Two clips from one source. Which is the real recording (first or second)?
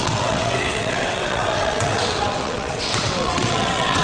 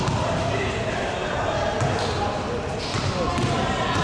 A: second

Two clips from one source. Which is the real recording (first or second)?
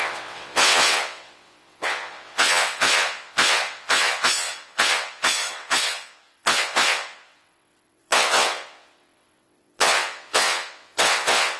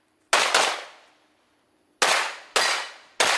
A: second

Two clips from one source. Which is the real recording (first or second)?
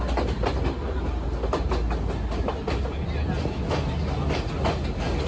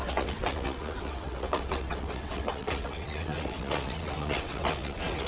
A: first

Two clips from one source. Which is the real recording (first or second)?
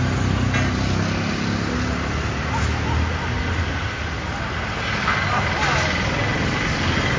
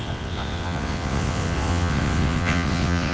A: first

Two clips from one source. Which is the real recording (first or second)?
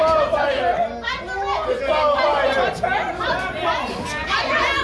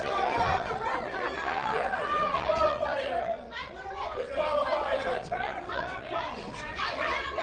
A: first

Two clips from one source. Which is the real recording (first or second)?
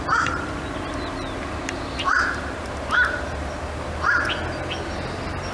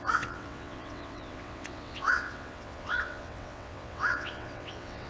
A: first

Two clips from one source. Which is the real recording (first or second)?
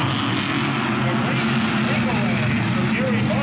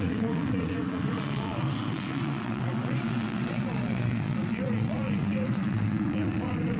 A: first